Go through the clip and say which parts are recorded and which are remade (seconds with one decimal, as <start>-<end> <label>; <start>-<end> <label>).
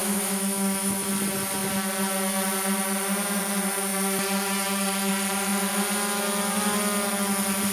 0.0-1.1 remade; 1.1-7.7 recorded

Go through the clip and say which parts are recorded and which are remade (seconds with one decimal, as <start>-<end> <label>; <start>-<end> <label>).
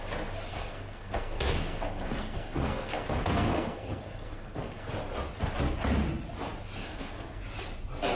0.0-0.5 recorded; 0.5-4.9 remade; 4.9-6.8 recorded; 6.8-7.4 remade; 7.4-8.2 recorded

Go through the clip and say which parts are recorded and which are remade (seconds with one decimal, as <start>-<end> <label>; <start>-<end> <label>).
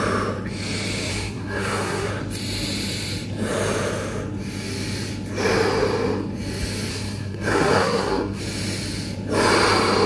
0.0-1.1 recorded; 1.1-2.1 remade; 2.1-6.9 recorded; 6.9-8.4 remade; 8.4-10.1 recorded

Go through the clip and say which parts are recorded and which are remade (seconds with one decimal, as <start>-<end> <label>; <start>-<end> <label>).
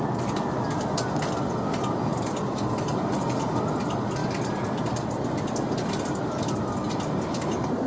0.0-2.1 recorded; 2.1-3.7 remade; 3.7-7.9 recorded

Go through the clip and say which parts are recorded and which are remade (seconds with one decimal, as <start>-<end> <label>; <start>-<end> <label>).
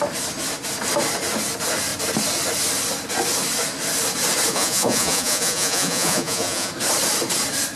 0.0-4.5 recorded; 4.5-6.7 remade; 6.7-7.8 recorded